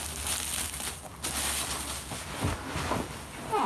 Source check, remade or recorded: recorded